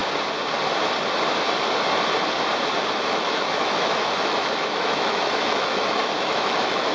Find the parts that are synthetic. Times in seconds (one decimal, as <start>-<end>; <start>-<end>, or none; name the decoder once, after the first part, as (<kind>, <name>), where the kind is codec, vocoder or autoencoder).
3.1-6.9 (autoencoder, DAC-VAE)